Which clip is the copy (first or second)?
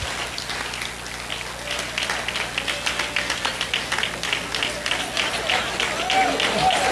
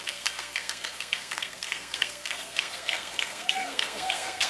second